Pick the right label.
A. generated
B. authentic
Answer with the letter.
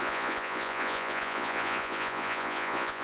A